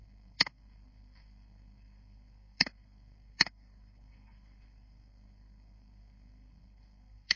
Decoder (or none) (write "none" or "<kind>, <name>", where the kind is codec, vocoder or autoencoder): codec, SNAC